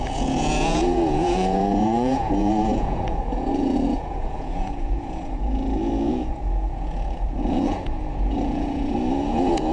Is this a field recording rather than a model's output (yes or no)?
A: no